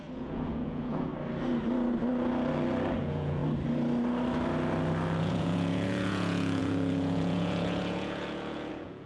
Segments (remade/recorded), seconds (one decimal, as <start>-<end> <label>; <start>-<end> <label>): 0.0-1.1 remade; 1.1-3.0 recorded; 3.0-3.4 remade; 3.4-5.2 recorded; 5.2-9.1 remade